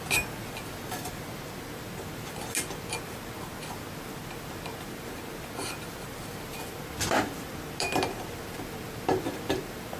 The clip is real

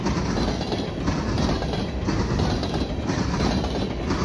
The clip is real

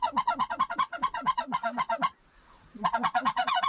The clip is fake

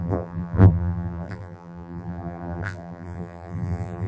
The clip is fake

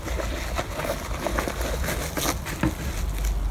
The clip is real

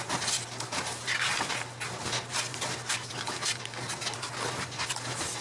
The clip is real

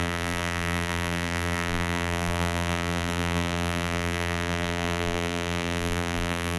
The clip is fake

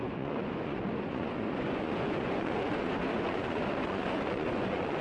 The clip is fake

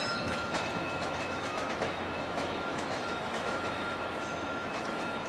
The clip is fake